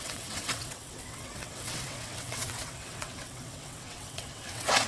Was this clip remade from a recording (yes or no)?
yes